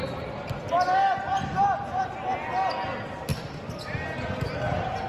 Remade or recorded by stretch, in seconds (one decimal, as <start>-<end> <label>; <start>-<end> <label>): 0.0-5.1 recorded